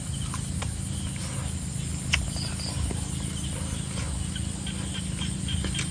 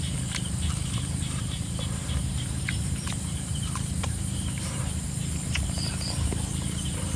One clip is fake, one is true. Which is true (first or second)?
first